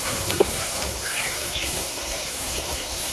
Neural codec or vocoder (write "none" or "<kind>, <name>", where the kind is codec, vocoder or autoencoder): codec, SNAC